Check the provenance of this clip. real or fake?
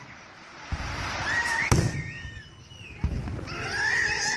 real